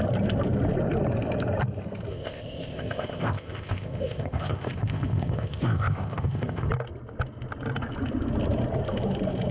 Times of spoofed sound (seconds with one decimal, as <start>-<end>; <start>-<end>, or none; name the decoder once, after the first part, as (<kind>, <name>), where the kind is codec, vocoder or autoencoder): 2.1-6.7 (codec, ZipCodec)

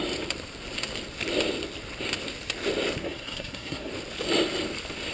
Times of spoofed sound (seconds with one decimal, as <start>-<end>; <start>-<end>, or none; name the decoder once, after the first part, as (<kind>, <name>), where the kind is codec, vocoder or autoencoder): 3.0-3.9 (codec, SNAC)

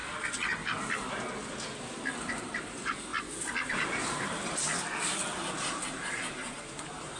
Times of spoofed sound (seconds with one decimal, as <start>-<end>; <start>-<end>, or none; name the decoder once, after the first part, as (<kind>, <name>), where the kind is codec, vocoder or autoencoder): 2.3-3.1 (vocoder, BigVGAN v2); 3.7-4.7; 5.6-7.2

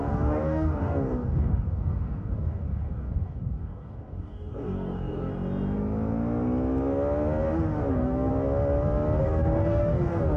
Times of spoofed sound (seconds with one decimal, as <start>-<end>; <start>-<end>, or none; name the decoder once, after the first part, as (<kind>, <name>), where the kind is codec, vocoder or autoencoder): 0.0-5.3 (codec, DAC); 7.9-8.3; 9.2-10.4

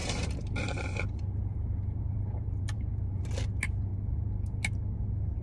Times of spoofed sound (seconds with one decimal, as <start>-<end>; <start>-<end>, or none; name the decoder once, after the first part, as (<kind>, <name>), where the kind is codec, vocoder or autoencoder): 0.0-3.2 (vocoder, BigVGAN v2)